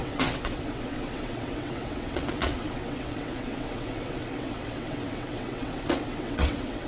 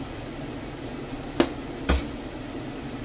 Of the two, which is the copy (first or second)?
first